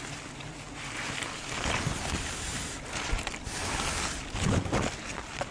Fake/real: real